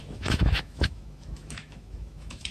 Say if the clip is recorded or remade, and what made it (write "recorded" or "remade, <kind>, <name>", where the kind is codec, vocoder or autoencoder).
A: remade, autoencoder, DAC-VAE